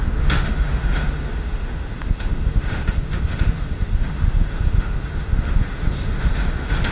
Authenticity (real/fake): fake